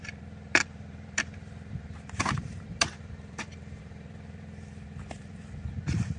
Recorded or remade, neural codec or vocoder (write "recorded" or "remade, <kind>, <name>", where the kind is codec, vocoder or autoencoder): remade, vocoder, BigVGAN v2